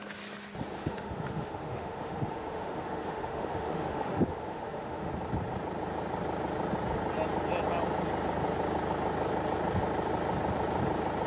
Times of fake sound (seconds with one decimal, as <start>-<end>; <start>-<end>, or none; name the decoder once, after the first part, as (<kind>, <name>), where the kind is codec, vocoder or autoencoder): 0.8-5.1 (autoencoder, DAC-VAE)